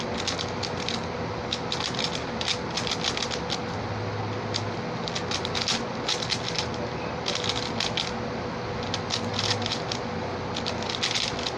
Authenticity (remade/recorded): recorded